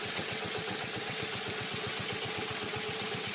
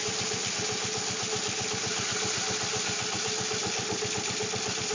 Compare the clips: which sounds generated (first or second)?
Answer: first